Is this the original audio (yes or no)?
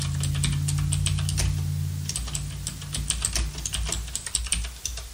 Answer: yes